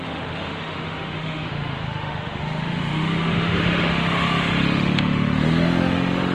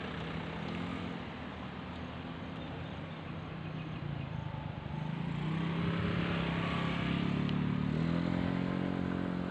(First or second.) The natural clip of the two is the second